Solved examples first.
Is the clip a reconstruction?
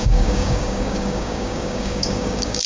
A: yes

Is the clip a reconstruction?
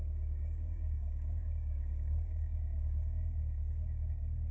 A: yes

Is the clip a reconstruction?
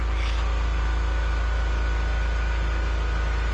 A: no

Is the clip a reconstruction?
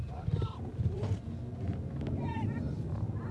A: no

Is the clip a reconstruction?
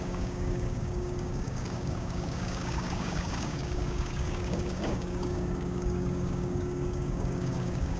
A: yes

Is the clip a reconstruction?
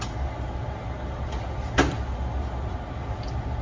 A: no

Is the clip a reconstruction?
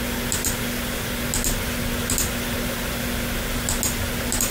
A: no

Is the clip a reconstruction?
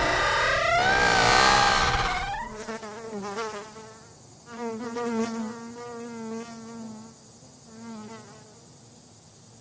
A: no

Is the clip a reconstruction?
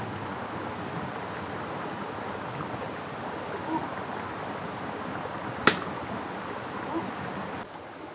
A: no